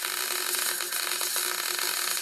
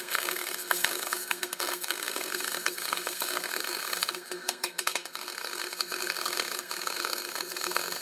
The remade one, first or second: second